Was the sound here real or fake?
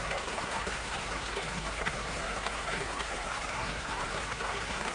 fake